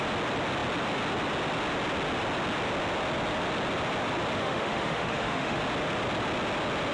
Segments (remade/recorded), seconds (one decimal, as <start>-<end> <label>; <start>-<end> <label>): 0.0-4.4 recorded; 4.4-5.6 remade; 5.6-6.9 recorded